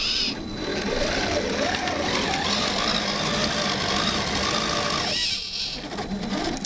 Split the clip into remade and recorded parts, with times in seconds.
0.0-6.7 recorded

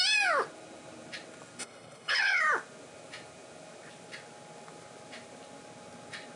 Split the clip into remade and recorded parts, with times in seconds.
0.0-1.6 recorded; 1.6-2.4 remade; 2.4-6.4 recorded

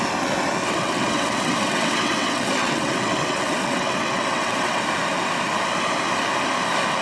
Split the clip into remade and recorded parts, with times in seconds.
0.0-0.6 recorded; 0.6-4.8 remade; 4.8-7.0 recorded